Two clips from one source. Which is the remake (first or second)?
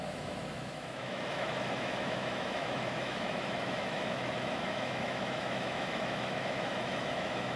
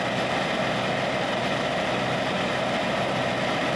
first